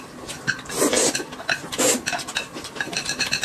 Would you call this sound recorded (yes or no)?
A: yes